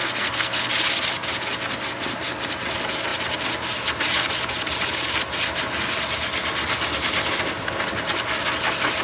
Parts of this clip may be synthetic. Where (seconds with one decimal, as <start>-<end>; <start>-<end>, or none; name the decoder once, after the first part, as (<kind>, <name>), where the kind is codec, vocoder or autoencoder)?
0.0-0.7 (codec, SNAC)